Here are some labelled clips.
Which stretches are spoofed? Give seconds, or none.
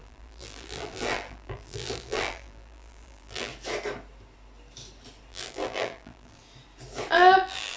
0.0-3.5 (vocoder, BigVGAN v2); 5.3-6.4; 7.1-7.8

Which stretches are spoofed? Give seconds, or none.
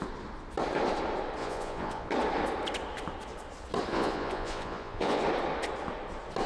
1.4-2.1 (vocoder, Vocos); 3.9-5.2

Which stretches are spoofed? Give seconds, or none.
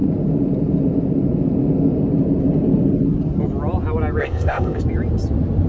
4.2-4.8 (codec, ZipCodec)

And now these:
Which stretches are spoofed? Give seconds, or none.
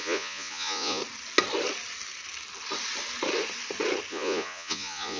0.0-1.0 (vocoder, Vocos); 4.1-5.2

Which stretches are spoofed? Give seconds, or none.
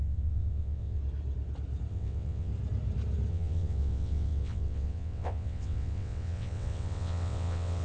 0.0-1.0 (vocoder, WaveNeXt); 1.9-2.5; 3.3-7.8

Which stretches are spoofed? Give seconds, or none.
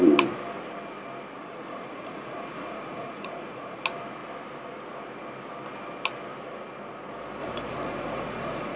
1.4-3.8 (vocoder, Vocos); 7.4-8.8